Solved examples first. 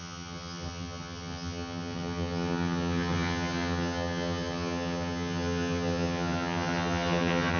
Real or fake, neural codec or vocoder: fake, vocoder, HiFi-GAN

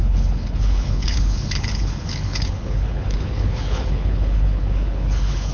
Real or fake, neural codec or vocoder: fake, codec, HILCodec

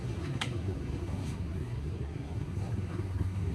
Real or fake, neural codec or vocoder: fake, codec, SNAC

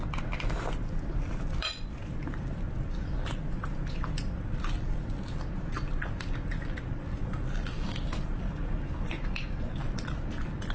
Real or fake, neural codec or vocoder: real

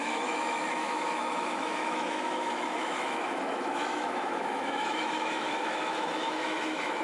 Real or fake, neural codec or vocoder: fake, autoencoder, DAC-VAE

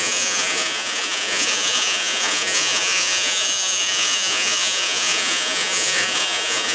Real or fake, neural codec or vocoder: fake, vocoder, Vocos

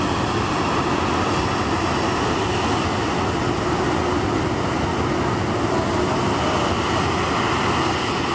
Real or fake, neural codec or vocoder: real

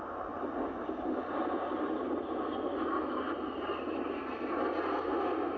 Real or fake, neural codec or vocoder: real